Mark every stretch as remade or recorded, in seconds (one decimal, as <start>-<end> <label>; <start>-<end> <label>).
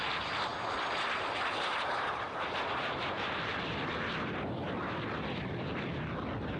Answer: 0.0-6.6 recorded